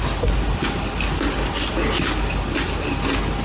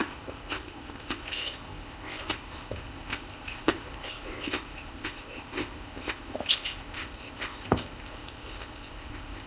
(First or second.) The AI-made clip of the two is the second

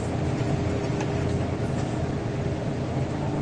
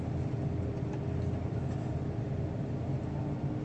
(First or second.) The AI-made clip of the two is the second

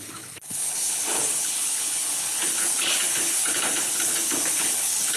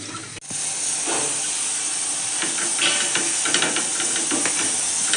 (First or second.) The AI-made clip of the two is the first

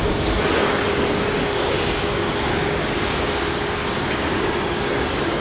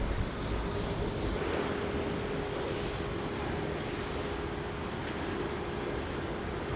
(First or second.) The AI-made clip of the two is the first